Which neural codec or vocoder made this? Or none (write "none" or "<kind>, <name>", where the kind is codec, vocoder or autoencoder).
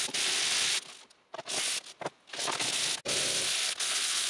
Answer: none